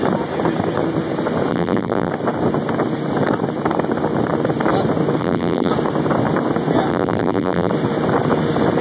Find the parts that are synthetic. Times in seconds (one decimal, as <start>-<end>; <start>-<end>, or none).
1.5-2.1; 5.2-5.7; 6.9-7.7